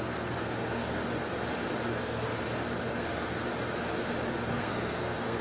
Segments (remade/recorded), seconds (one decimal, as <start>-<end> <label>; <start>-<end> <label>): 0.0-1.0 remade; 1.0-1.9 recorded; 1.9-2.3 remade; 2.3-2.9 recorded; 2.9-3.4 remade; 3.4-4.4 recorded; 4.4-5.4 remade